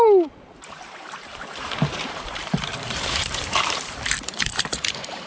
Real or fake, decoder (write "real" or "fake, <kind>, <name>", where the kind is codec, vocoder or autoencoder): fake, vocoder, BigVGAN v2